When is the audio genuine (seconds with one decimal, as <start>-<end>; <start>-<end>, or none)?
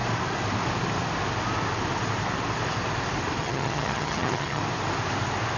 0.0-3.4; 4.6-5.6